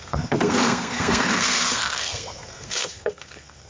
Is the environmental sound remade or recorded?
remade